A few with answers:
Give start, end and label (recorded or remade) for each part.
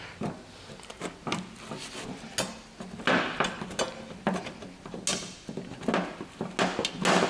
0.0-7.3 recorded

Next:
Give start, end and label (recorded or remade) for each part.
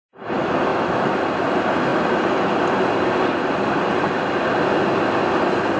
0.0-0.7 recorded; 0.7-1.2 remade; 1.2-5.8 recorded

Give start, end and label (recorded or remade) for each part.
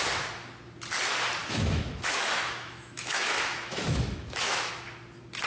0.0-1.4 recorded; 1.4-4.7 remade; 4.7-5.5 recorded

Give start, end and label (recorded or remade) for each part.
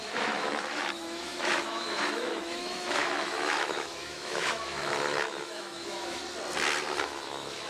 0.0-6.2 remade; 6.2-7.0 recorded; 7.0-7.7 remade